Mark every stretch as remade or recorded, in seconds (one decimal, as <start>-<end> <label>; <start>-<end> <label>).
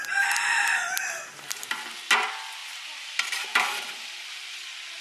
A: 0.0-1.0 remade; 1.0-2.6 recorded; 2.6-4.3 remade; 4.3-5.0 recorded